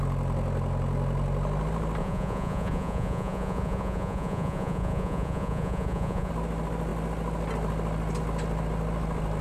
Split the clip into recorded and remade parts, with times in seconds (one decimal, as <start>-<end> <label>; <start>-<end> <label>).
0.0-2.0 recorded; 2.0-6.3 remade; 6.3-9.4 recorded